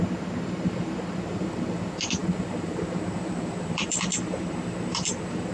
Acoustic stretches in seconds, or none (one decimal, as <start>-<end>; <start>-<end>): none